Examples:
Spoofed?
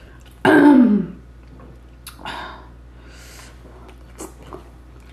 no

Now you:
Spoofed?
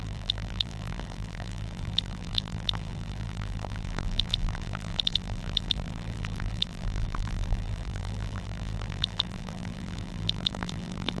yes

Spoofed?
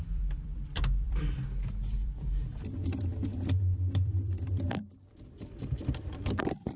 yes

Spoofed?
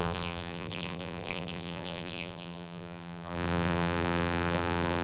yes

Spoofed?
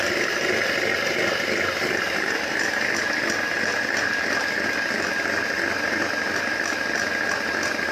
no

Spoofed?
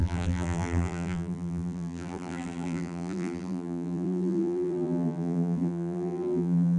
yes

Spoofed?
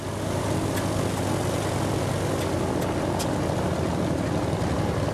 no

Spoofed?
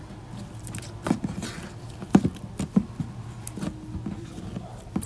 no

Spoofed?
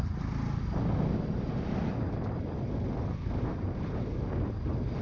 no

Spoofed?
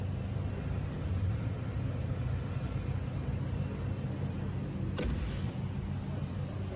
no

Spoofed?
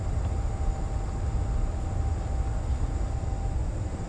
no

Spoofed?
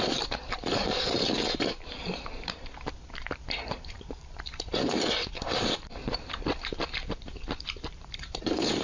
yes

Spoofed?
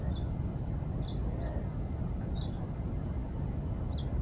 no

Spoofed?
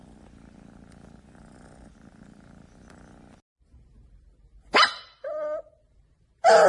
no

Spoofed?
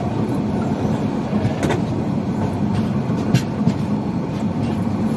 no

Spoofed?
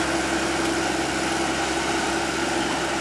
no